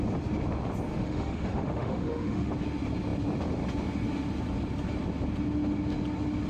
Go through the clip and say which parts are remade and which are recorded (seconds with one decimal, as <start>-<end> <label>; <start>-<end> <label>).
0.0-0.9 recorded; 0.9-2.5 remade; 2.5-6.5 recorded